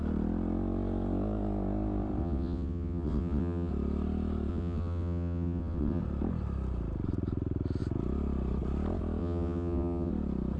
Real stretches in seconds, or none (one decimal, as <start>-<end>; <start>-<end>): 0.0-2.2; 3.7-4.5; 6.0-9.2; 10.1-10.6